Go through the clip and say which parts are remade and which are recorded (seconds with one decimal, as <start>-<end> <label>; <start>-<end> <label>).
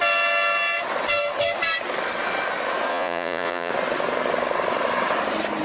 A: 0.0-2.9 recorded; 2.9-3.7 remade; 3.7-5.6 recorded